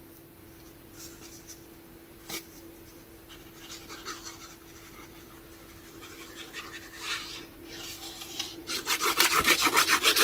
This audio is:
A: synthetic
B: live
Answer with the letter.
B